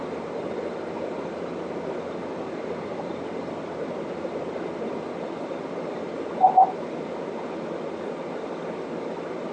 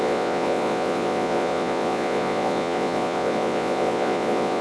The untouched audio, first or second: first